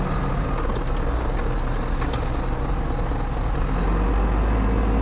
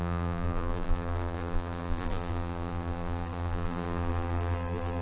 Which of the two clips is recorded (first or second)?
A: first